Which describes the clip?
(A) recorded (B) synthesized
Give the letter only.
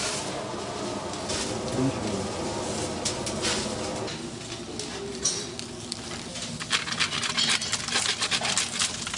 A